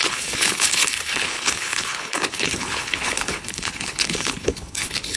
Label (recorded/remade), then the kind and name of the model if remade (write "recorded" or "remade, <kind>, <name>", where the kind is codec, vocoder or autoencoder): remade, codec, HILCodec